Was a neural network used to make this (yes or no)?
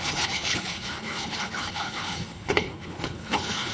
yes